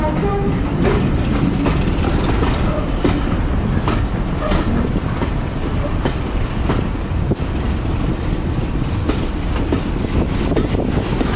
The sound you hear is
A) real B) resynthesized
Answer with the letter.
A